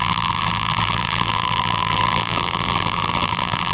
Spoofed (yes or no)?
yes